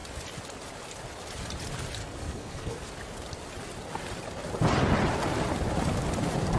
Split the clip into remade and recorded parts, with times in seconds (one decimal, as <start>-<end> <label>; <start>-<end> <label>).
0.0-2.0 recorded; 2.0-2.9 remade; 2.9-6.6 recorded